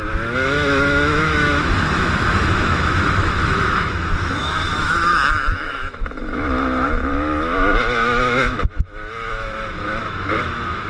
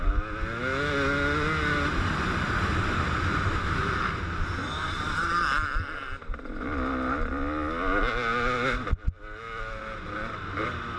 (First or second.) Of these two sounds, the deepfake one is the first